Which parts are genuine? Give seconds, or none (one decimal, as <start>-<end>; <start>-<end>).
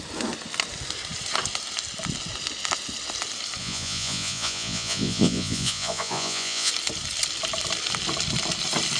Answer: 0.0-3.6; 6.7-9.0